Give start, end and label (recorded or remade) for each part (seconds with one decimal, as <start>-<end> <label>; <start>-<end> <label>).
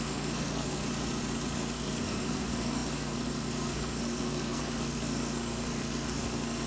0.0-0.8 remade; 0.8-1.5 recorded; 1.5-6.7 remade